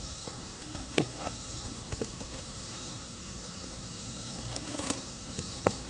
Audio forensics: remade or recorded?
remade